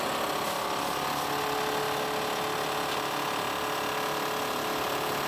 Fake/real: real